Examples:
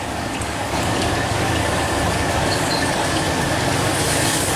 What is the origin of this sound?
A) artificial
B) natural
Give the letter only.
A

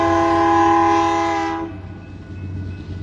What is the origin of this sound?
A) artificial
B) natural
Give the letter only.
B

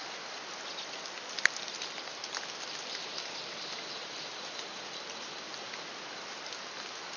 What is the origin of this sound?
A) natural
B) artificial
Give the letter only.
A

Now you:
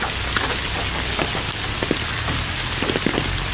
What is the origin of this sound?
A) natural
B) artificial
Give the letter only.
A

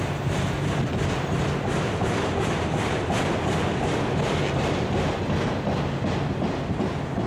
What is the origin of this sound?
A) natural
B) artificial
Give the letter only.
A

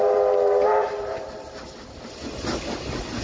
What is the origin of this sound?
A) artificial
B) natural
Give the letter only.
B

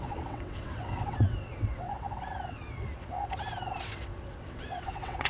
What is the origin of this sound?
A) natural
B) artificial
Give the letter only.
B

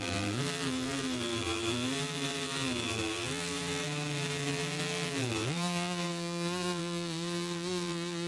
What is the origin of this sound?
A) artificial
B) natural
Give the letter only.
A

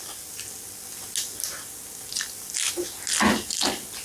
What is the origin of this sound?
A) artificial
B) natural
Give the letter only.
B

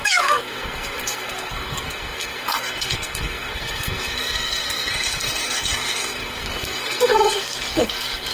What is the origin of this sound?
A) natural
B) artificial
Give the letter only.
B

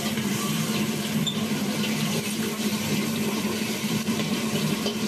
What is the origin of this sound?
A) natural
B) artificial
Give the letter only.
B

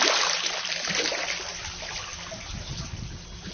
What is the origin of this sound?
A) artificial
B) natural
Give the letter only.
B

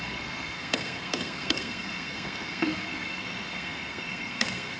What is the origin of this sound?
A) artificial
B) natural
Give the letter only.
A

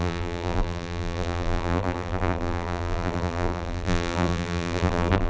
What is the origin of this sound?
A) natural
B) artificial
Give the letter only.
B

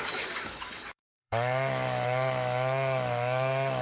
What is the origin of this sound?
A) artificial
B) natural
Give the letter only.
A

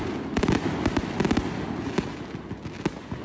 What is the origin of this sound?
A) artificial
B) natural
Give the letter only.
B